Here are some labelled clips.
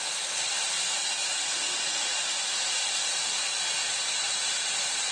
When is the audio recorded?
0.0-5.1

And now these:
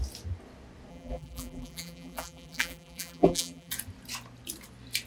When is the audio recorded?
0.0-0.9; 3.7-5.1